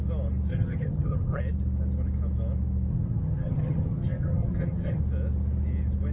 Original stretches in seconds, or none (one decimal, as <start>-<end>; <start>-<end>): 0.0-0.5; 1.4-2.9; 5.0-6.1

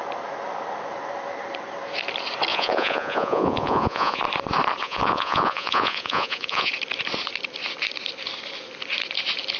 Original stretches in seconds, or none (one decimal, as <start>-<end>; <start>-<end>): 0.0-2.5; 4.2-4.8; 6.7-9.6

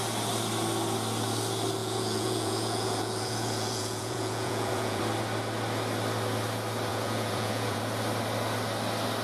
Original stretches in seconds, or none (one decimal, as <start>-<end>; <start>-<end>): 0.0-1.8; 5.0-6.9; 7.8-9.2

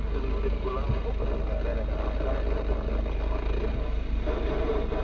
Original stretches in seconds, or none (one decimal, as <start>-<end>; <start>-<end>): 0.0-5.0

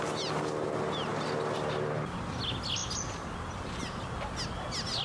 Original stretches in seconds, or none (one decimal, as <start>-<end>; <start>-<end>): 0.0-5.0

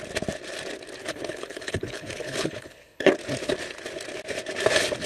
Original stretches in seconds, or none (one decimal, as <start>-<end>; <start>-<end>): 0.0-1.0; 3.1-5.1

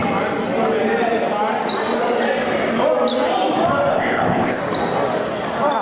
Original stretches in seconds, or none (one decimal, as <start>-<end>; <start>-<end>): 0.0-3.9; 4.6-5.8

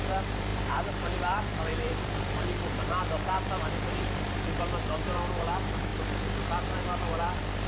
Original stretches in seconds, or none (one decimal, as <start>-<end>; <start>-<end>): 5.9-6.7